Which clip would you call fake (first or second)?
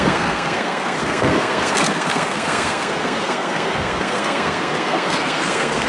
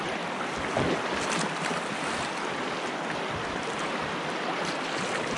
first